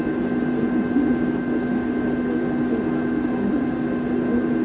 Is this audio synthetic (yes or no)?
no